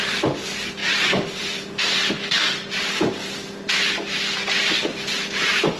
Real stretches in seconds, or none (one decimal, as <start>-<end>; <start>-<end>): 0.0-0.8; 3.7-5.8